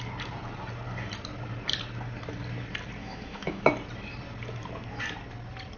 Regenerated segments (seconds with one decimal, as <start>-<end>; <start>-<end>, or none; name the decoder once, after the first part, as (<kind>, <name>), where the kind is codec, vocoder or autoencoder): 3.0-3.7 (autoencoder, DAC-VAE)